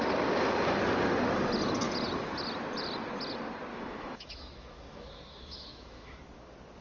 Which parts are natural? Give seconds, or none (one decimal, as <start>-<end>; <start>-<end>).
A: 0.0-3.7; 6.2-6.8